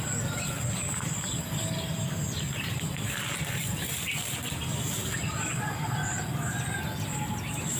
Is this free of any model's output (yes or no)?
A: yes